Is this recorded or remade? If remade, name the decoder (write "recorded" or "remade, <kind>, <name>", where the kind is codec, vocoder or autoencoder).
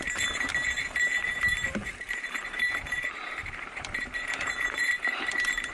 remade, vocoder, BigVGAN v2